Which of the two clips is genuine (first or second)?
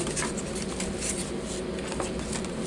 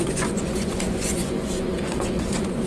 first